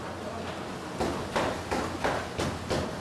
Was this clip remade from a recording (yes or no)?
no